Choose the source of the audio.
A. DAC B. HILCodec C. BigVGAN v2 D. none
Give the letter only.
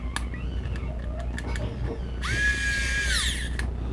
D